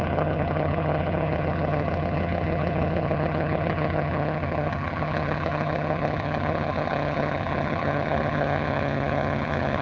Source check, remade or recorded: remade